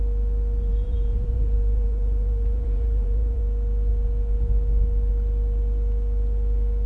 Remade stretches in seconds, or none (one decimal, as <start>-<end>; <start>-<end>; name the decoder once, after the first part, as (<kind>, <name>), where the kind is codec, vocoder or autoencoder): 0.7-3.4 (vocoder, BigVGAN v2)